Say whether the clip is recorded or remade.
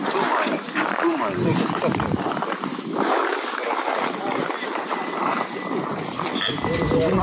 remade